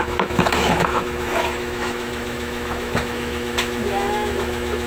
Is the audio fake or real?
fake